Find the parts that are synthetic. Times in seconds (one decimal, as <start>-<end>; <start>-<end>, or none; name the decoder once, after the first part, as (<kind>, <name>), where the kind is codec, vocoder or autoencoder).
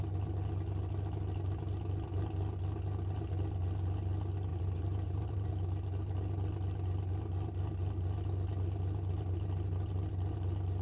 4.5-5.5 (vocoder, BigVGAN v2)